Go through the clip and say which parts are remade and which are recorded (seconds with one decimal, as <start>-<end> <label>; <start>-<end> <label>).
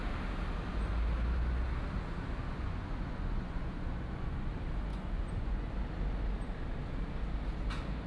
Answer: 0.0-2.4 recorded; 2.4-4.5 remade; 4.5-4.9 recorded; 4.9-5.7 remade; 5.7-8.1 recorded